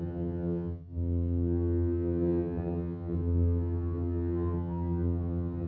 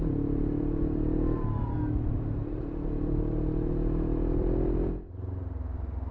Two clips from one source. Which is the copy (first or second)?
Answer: first